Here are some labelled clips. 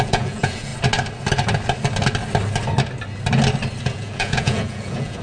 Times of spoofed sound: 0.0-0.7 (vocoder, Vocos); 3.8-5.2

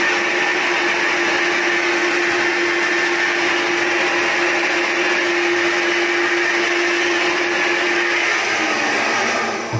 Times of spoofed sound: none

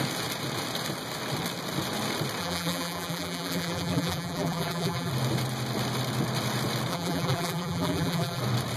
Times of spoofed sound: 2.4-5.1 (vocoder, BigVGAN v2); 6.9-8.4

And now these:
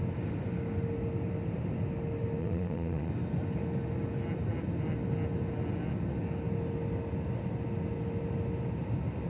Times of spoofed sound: 2.4-3.1 (vocoder, Vocos)

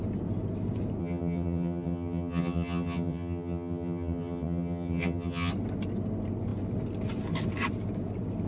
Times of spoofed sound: 1.0-5.5 (vocoder, HiFi-GAN)

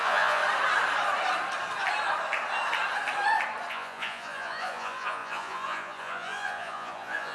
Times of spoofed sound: 0.0-0.4 (vocoder, Vocos); 3.7-7.3

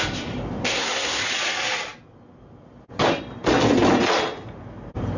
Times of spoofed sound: 0.6-1.2 (codec, SNAC)